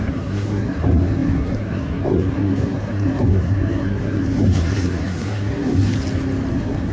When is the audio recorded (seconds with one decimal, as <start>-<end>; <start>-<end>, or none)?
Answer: 5.9-6.5

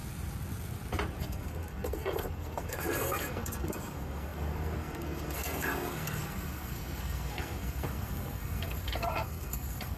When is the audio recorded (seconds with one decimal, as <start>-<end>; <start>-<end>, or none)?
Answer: 0.0-1.2

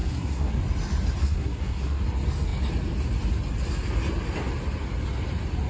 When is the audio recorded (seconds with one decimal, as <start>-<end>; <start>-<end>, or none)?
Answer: 0.6-1.2; 2.0-5.7

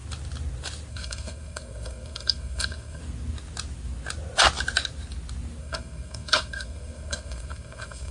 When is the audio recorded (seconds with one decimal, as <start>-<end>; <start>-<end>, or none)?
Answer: 0.0-0.9; 3.0-5.6

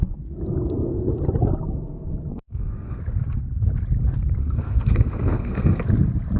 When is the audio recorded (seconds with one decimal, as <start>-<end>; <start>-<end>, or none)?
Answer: 0.0-2.3; 3.0-4.4; 5.8-6.4

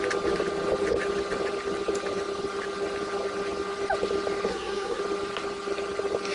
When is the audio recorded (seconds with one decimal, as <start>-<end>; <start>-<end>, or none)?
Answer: 0.0-4.5; 5.0-6.3

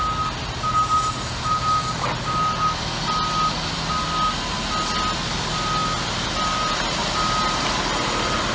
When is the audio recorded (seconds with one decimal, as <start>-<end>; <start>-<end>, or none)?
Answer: 0.0-8.5

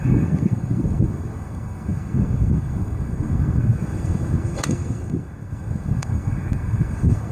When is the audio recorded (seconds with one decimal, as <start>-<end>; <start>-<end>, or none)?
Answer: none